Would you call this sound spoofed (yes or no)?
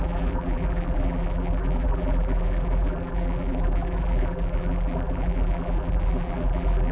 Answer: yes